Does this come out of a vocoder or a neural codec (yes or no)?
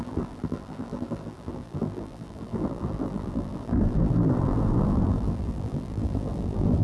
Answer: yes